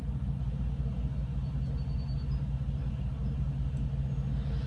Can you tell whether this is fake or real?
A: real